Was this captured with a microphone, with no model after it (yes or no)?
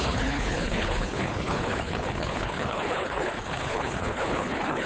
no